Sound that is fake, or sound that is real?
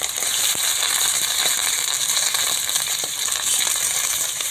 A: fake